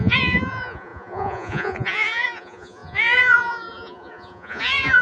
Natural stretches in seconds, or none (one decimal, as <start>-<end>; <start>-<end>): none